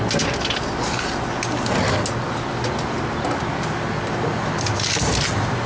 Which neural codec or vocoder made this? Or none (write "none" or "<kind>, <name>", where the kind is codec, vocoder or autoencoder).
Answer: none